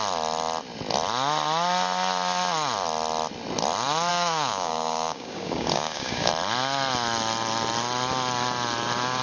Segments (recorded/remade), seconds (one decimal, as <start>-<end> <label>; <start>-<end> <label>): 0.0-4.1 recorded; 4.1-6.3 remade; 6.3-9.2 recorded